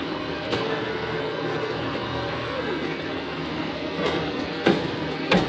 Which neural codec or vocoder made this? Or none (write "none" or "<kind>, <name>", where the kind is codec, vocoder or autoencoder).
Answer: codec, SNAC